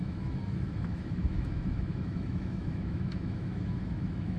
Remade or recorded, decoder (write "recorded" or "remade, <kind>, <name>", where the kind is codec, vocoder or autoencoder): remade, autoencoder, DAC-VAE